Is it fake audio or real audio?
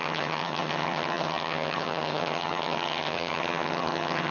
fake